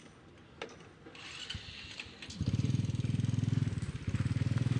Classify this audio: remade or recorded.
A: recorded